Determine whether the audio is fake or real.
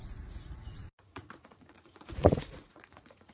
fake